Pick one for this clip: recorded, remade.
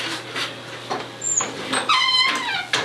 recorded